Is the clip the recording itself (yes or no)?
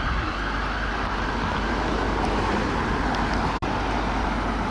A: yes